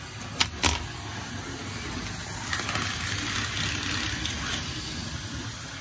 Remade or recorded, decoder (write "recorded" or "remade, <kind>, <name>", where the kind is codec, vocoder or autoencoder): recorded